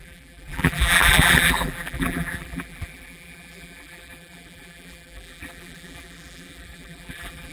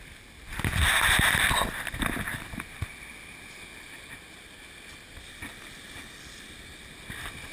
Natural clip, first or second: second